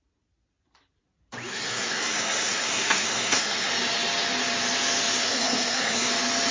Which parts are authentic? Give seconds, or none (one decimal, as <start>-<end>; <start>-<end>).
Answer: 0.0-1.5; 3.7-5.2; 6.1-6.5